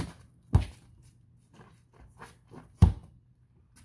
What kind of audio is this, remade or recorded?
recorded